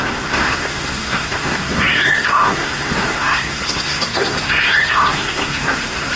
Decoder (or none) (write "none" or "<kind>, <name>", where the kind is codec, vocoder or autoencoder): codec, SNAC